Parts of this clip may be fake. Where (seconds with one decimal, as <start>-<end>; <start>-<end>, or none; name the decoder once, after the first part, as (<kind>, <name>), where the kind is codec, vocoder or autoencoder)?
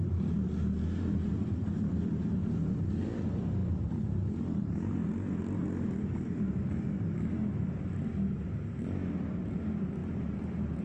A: 3.6-4.3 (vocoder, BigVGAN v2); 10.0-10.8